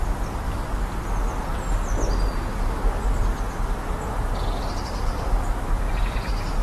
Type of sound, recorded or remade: recorded